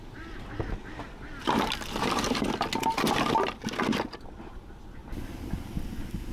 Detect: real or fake real